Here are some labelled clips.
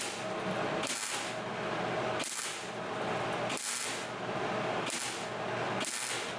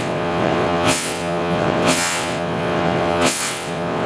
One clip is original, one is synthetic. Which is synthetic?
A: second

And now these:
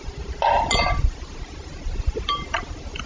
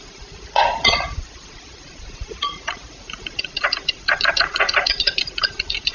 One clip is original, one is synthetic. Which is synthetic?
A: second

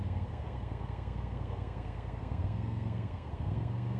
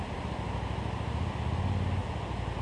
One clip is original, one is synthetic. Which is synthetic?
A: first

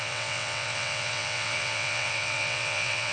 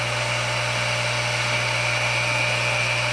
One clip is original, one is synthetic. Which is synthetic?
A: first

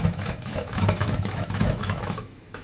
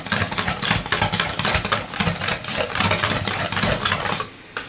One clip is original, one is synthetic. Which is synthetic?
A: first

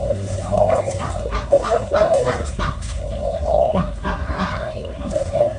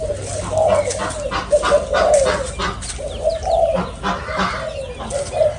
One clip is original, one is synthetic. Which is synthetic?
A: first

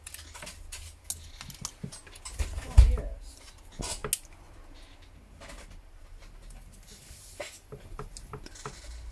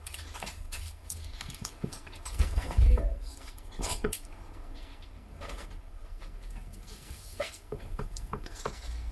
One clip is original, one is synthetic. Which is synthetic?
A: second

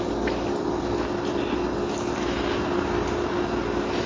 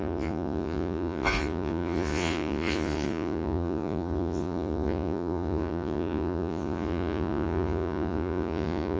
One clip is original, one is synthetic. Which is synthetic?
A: second